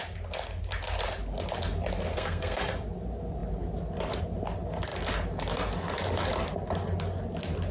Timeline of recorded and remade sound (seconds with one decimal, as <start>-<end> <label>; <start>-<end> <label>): 0.0-2.1 recorded; 2.1-2.6 remade; 2.6-7.7 recorded